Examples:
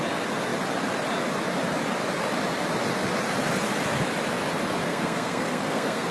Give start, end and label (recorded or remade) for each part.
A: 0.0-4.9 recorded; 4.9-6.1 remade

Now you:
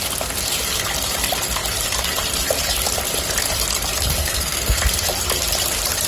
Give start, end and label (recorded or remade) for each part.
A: 0.0-4.2 recorded; 4.2-4.8 remade; 4.8-6.1 recorded

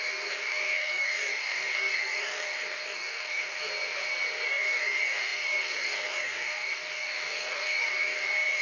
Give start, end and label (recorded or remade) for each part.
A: 0.0-3.7 remade; 3.7-4.4 recorded; 4.4-8.6 remade

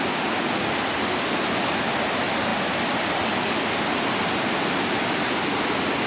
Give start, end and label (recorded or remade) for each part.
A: 0.0-6.1 recorded

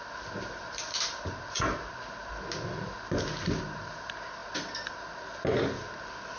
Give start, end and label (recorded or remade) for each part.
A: 0.0-6.4 recorded

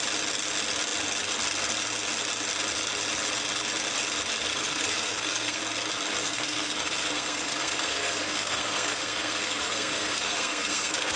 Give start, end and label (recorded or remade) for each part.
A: 0.0-4.5 recorded; 4.5-5.6 remade; 5.6-6.2 recorded; 6.2-11.2 remade

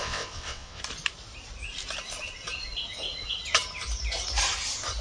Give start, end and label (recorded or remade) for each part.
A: 0.0-0.8 remade; 0.8-5.0 recorded